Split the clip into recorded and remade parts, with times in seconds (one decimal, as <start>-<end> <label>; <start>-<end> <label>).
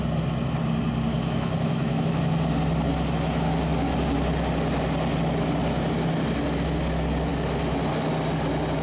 0.0-1.1 recorded; 1.1-2.2 remade; 2.2-8.8 recorded